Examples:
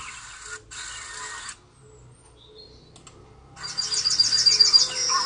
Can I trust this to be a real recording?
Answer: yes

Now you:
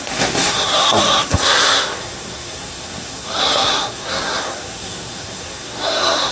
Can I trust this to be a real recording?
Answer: no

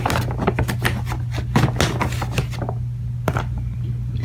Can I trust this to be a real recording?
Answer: yes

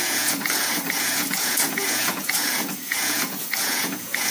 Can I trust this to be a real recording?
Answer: no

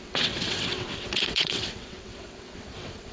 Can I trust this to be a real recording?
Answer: no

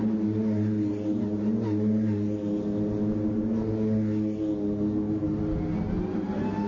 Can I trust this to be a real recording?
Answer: yes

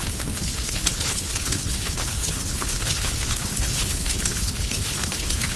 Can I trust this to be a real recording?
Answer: no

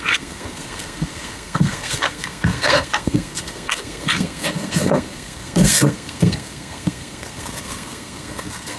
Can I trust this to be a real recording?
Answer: no